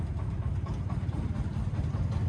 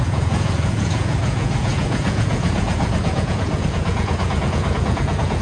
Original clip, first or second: first